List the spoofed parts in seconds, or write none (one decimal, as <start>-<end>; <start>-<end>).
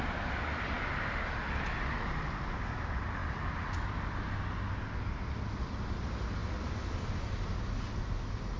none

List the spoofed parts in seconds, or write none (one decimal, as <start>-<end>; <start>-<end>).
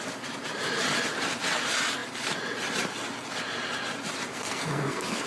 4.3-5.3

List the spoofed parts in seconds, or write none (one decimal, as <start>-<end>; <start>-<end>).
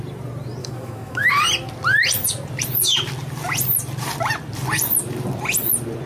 0.6-1.3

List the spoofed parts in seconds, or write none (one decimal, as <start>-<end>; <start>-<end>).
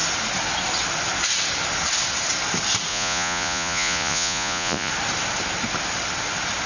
2.9-4.9